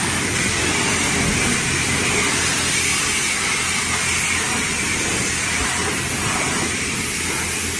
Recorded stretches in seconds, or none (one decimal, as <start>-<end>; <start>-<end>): 0.0-7.8